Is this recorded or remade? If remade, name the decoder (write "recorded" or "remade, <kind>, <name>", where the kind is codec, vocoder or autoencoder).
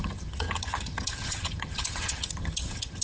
remade, vocoder, HiFi-GAN